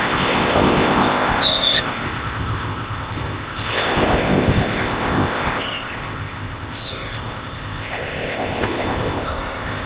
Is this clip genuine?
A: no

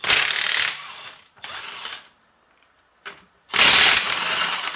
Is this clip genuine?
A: yes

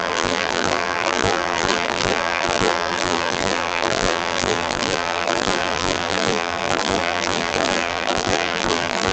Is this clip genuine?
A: no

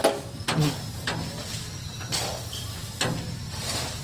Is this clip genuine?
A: yes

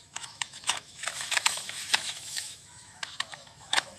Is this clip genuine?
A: no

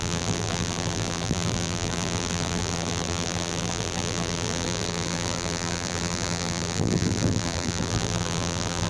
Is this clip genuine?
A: no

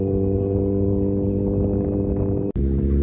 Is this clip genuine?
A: yes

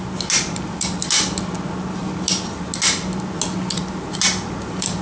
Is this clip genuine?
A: yes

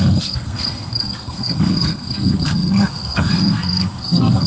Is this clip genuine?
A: no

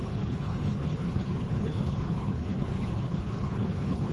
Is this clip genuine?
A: no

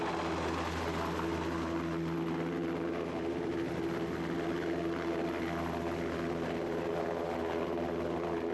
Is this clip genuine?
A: yes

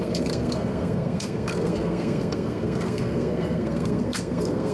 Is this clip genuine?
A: no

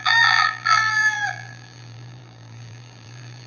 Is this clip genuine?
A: no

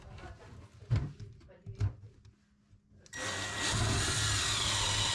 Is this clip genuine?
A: yes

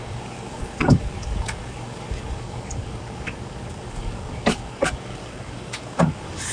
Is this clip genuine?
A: no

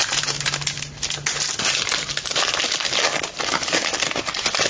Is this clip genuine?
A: yes